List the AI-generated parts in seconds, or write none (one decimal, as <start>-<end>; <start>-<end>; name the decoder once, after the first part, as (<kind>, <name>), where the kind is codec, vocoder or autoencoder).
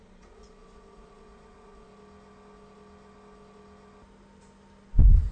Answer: 0.0-1.9 (vocoder, Vocos)